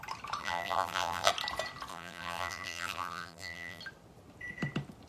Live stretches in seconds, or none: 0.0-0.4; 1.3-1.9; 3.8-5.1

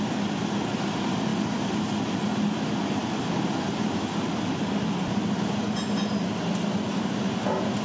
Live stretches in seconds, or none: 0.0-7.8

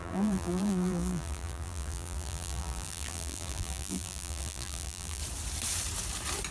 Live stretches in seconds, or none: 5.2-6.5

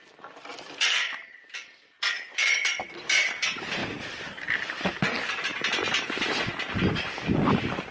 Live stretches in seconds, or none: 0.0-0.5; 3.3-3.8; 4.7-7.9

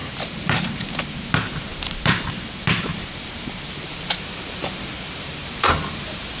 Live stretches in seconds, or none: none

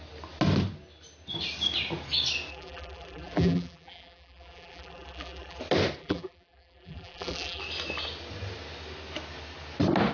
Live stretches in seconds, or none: 0.0-2.5; 5.6-6.0; 7.6-10.1